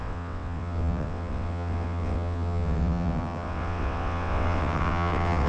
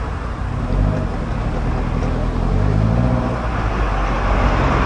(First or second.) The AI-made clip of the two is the first